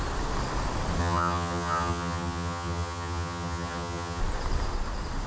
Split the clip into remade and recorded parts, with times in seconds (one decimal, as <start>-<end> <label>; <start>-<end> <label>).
0.0-1.0 recorded; 1.0-4.2 remade; 4.2-5.3 recorded